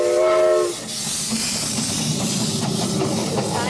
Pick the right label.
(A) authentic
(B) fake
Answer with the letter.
A